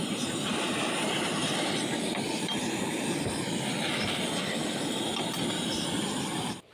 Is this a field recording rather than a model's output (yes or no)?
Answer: yes